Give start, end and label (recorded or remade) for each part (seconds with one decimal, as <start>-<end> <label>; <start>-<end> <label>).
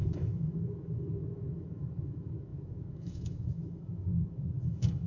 0.0-5.1 remade